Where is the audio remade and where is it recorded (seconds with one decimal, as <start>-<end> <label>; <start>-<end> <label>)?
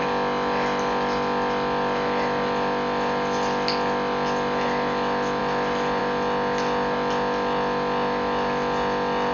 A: 0.0-9.3 recorded